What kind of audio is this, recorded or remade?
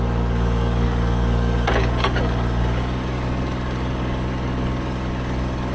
remade